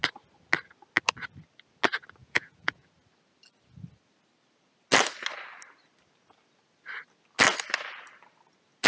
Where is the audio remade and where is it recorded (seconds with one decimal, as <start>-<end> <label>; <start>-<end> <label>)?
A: 0.0-2.2 recorded; 2.2-2.9 remade; 2.9-8.9 recorded